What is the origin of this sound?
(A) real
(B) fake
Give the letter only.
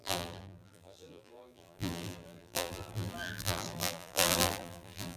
B